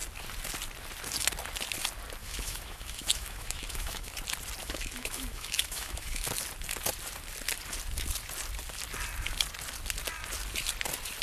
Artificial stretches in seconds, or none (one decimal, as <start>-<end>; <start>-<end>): 2.2-4.1; 4.6-6.3